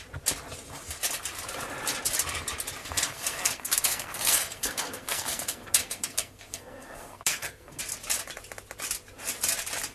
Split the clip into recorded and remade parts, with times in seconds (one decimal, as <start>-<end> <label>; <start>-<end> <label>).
0.0-2.8 recorded; 2.8-7.8 remade; 7.8-9.9 recorded

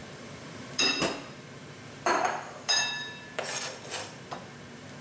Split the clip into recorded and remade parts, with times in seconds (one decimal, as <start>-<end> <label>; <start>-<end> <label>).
0.0-0.8 remade; 0.8-1.6 recorded; 1.6-4.4 remade; 4.4-5.0 recorded